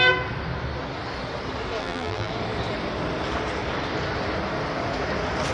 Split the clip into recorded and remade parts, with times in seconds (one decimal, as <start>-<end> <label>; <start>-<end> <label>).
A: 0.0-1.8 recorded; 1.8-2.3 remade; 2.3-5.5 recorded

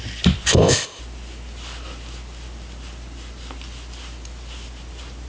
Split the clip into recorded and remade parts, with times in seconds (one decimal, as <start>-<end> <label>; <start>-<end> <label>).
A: 0.0-0.5 recorded; 0.5-1.0 remade; 1.0-5.3 recorded

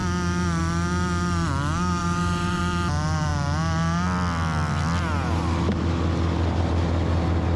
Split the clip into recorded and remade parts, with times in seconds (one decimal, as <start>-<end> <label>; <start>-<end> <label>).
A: 0.0-2.0 recorded; 2.0-2.6 remade; 2.6-7.6 recorded

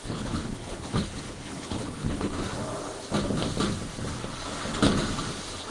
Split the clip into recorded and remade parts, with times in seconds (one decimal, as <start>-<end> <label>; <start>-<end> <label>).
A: 0.0-2.5 remade; 2.5-5.7 recorded

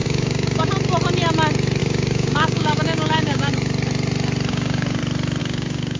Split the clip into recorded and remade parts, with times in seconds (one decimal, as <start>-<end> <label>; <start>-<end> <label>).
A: 0.0-0.7 remade; 0.7-1.8 recorded; 1.8-3.5 remade; 3.5-4.5 recorded; 4.5-5.0 remade; 5.0-5.4 recorded; 5.4-6.0 remade

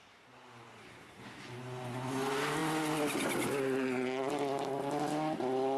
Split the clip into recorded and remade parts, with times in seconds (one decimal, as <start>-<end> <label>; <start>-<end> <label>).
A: 0.0-5.8 recorded

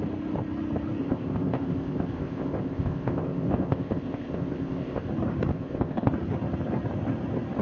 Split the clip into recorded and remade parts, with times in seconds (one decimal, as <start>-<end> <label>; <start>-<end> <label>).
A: 0.0-1.0 recorded; 1.0-5.1 remade; 5.1-5.5 recorded; 5.5-6.1 remade; 6.1-7.6 recorded

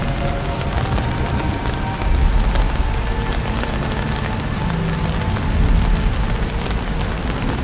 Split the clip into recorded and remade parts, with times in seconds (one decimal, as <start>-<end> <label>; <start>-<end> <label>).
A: 0.0-1.6 remade; 1.6-6.2 recorded; 6.2-7.6 remade